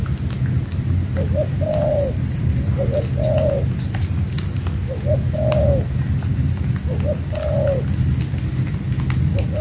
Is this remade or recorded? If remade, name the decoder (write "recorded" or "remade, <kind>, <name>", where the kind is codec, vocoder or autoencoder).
recorded